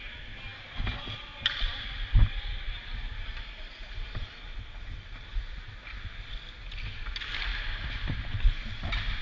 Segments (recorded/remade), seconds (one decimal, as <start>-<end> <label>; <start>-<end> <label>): 0.0-9.2 recorded